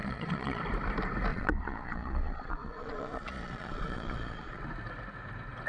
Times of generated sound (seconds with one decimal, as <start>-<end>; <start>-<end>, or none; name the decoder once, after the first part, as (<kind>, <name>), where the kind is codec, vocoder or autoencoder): 0.0-0.6 (vocoder, Vocos); 1.3-4.6